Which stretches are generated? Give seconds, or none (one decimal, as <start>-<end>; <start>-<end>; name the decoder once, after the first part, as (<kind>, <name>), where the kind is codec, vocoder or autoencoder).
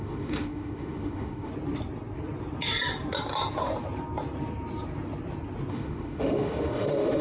0.0-1.5 (autoencoder, DAC-VAE); 5.7-7.2